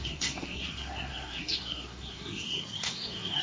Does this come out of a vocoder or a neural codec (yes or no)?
yes